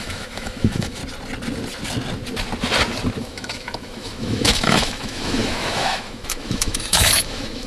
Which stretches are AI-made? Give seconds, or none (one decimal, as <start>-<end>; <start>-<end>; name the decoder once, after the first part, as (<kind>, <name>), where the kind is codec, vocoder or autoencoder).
0.0-1.0 (autoencoder, DAC-VAE); 3.2-7.7